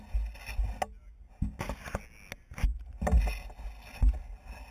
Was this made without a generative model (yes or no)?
yes